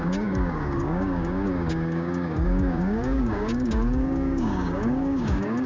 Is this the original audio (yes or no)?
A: no